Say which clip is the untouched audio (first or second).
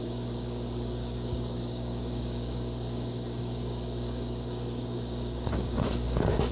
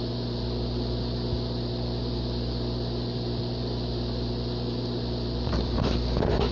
second